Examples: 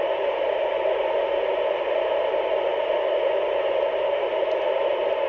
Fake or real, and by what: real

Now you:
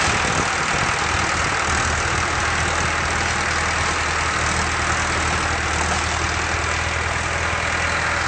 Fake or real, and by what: real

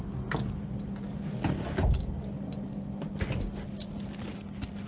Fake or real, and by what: real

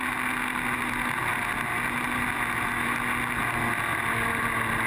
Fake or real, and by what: real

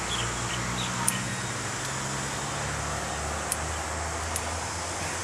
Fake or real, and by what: real